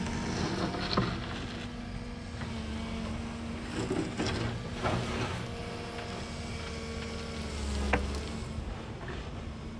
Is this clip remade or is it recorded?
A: recorded